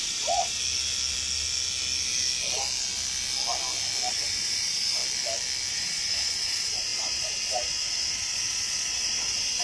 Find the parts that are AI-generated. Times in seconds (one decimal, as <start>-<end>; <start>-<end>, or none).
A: 0.0-0.6; 4.1-5.0; 5.7-9.6